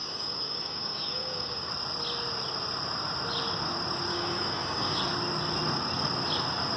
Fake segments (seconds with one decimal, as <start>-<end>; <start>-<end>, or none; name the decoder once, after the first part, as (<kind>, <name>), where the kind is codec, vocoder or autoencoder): 0.0-1.7 (codec, DAC); 4.1-5.0